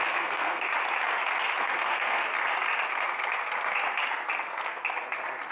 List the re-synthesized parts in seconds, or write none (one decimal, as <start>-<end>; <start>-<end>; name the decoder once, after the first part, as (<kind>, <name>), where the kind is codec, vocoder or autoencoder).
0.0-0.7 (codec, SNAC); 1.6-2.2